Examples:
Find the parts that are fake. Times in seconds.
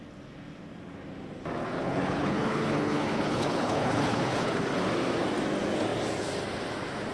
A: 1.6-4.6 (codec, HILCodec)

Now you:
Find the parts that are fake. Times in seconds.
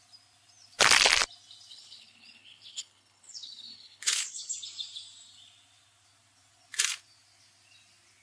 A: 1.7-4.5 (codec, HILCodec)